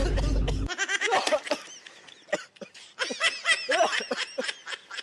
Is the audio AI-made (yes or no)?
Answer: no